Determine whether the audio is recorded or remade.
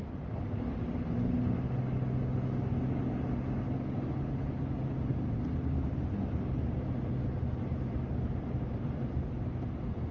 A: recorded